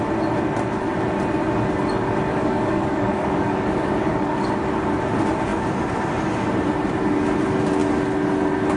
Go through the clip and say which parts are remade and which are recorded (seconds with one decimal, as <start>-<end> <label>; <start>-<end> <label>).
0.0-2.3 recorded; 2.3-4.5 remade; 4.5-8.8 recorded